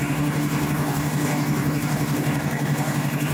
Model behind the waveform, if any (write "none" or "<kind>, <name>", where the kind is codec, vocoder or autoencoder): codec, DAC